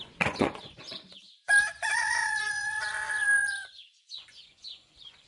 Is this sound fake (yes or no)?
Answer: yes